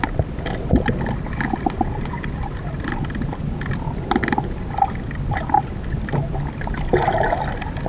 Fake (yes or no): no